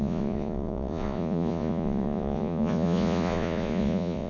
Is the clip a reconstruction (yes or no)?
yes